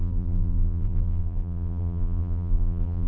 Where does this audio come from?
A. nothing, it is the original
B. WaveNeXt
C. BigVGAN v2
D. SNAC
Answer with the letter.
C